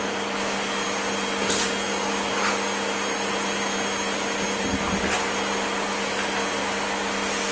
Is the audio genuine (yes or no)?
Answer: yes